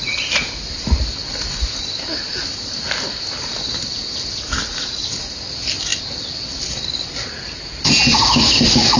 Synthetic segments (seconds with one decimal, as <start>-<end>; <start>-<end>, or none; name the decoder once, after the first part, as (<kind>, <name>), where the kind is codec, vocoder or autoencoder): none